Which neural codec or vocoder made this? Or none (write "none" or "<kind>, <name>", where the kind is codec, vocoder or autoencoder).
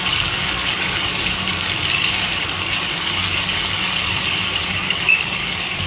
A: codec, DAC